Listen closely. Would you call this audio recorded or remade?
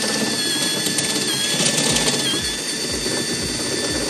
recorded